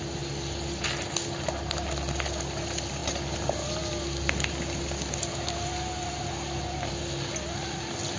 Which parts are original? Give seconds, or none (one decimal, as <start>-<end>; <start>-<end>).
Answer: 0.0-8.2